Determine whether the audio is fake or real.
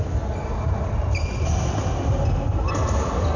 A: real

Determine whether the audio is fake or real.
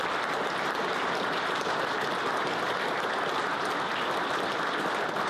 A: real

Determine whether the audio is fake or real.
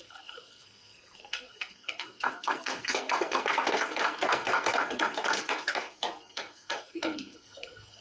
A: fake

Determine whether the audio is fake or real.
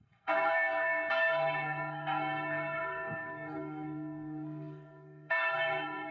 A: fake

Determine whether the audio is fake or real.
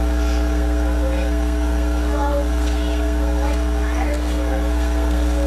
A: fake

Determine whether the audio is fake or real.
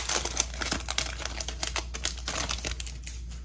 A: real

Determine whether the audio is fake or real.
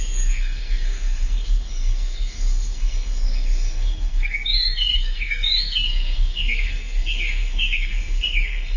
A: fake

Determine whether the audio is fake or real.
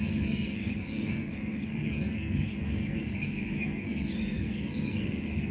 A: fake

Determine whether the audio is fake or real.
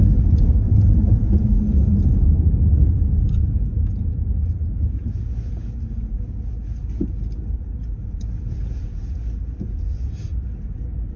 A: real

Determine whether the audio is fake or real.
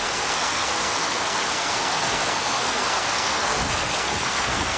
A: fake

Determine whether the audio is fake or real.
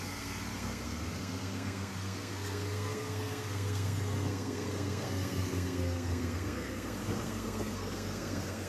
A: fake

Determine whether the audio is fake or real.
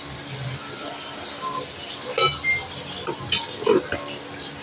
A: real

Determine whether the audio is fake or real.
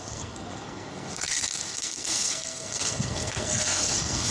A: fake